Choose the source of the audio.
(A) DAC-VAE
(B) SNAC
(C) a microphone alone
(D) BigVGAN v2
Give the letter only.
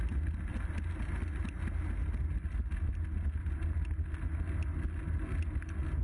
C